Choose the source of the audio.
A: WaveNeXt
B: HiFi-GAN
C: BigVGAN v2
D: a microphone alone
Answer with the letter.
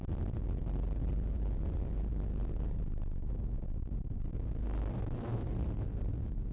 D